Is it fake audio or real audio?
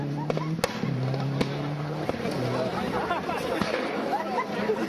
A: real